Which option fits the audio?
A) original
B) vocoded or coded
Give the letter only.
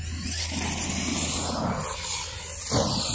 A